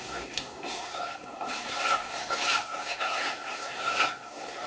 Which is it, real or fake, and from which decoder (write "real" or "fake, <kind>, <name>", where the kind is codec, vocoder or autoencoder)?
fake, codec, SNAC